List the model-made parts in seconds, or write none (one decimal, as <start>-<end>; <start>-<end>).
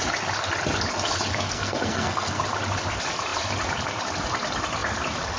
1.3-2.4